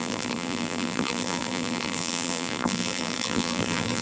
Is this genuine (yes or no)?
no